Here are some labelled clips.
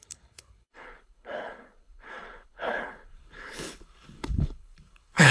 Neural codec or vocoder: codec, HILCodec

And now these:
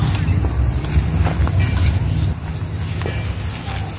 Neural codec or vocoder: none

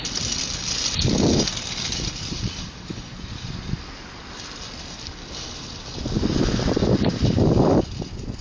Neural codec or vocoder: none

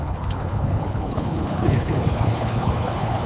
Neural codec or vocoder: codec, HILCodec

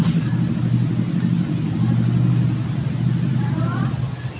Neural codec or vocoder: none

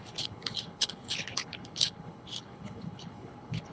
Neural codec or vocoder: codec, HILCodec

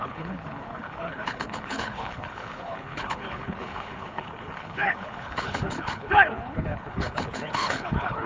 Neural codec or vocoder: codec, HILCodec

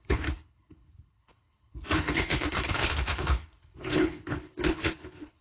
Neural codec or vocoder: codec, HILCodec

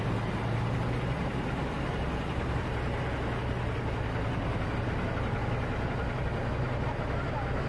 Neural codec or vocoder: none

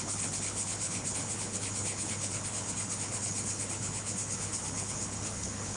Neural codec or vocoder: codec, HILCodec